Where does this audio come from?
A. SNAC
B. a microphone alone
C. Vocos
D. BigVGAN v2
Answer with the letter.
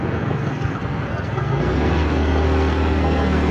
A